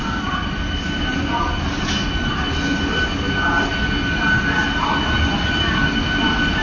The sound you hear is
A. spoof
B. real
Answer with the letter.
B